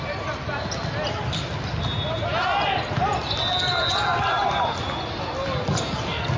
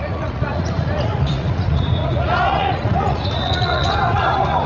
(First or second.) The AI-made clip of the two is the second